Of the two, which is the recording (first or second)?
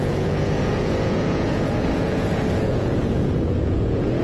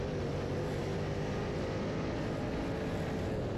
second